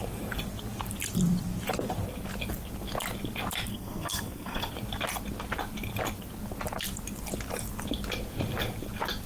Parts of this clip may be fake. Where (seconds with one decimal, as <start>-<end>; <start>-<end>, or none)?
3.7-4.7